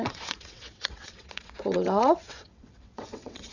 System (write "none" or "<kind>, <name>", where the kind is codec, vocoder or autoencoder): vocoder, WaveNeXt